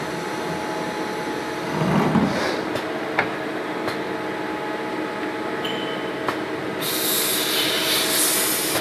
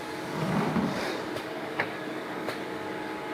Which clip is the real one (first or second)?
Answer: first